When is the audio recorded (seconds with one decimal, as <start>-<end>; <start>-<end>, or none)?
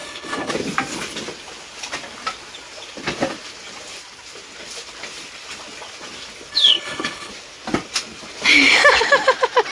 0.5-6.5; 7.3-9.7